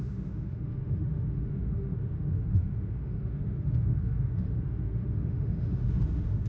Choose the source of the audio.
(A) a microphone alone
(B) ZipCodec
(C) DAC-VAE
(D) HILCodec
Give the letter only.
C